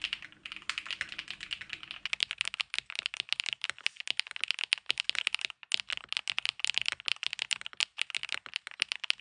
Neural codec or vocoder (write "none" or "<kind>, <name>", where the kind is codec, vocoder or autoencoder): none